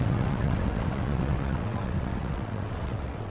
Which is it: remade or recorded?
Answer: remade